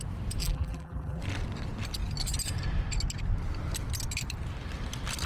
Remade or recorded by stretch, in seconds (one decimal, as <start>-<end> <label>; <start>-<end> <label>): 0.0-0.4 recorded; 0.4-1.2 remade; 1.2-5.3 recorded